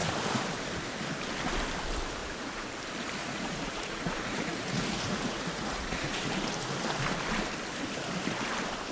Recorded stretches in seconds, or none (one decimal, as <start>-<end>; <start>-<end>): 0.0-2.2; 2.7-3.2; 6.3-8.9